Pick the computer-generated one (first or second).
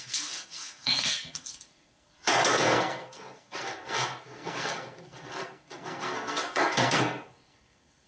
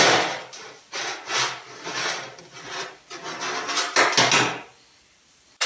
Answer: first